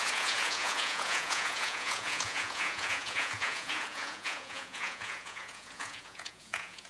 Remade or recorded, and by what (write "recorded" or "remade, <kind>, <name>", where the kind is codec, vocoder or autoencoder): remade, vocoder, Vocos